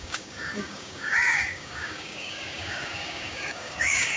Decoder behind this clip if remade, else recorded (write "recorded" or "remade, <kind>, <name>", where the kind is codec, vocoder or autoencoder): remade, codec, DAC